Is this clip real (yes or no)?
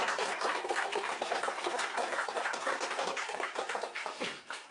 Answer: no